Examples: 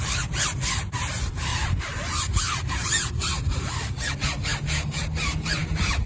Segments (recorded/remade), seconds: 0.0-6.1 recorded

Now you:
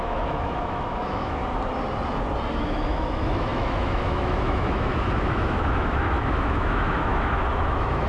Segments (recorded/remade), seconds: 0.0-1.4 remade; 1.4-2.5 recorded; 2.5-8.1 remade

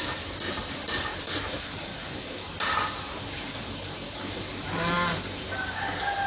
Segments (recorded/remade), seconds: 0.0-6.3 recorded

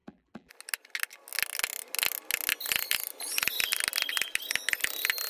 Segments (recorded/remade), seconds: 0.0-0.5 remade; 0.5-5.3 recorded

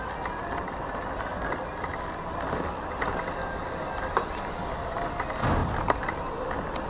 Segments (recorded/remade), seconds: 0.0-6.9 recorded

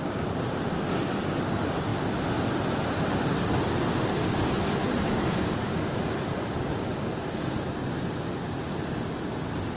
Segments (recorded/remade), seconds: 0.0-1.9 remade; 1.9-4.3 recorded; 4.3-6.9 remade; 6.9-8.9 recorded; 8.9-9.8 remade